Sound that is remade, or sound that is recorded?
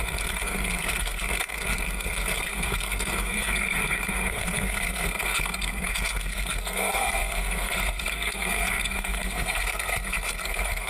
remade